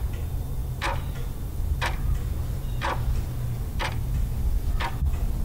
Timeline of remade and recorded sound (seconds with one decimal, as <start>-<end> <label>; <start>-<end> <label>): 0.0-4.0 recorded; 4.0-4.8 remade; 4.8-5.4 recorded